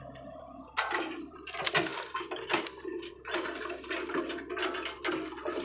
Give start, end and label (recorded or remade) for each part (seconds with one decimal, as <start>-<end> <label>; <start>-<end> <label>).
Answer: 0.0-5.6 recorded